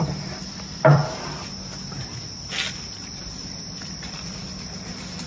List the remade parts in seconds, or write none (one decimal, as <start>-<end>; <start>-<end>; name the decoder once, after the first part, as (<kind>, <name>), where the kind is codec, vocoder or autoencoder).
0.0-1.0 (vocoder, BigVGAN v2); 3.2-5.3